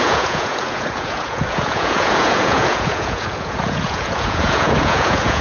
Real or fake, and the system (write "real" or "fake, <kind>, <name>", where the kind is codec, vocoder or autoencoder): fake, vocoder, Vocos